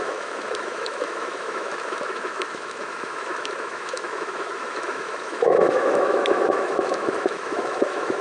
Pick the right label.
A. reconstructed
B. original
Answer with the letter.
A